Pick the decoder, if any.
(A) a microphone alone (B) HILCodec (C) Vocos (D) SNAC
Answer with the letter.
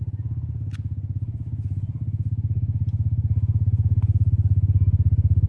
A